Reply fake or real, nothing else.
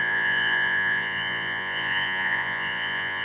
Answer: fake